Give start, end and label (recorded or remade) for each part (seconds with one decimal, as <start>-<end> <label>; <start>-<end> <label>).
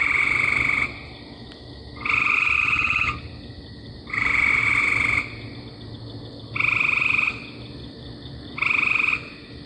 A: 0.0-9.7 recorded